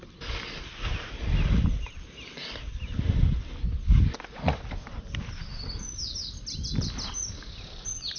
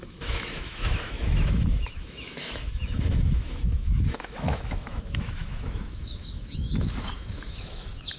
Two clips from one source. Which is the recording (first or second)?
first